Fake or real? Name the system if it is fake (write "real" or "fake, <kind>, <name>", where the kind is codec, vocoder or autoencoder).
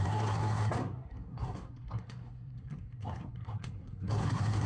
fake, codec, SNAC